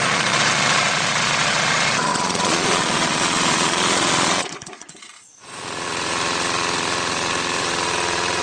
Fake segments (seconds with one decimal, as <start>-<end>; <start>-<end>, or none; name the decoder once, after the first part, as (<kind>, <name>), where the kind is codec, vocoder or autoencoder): 0.0-8.4 (vocoder, Vocos)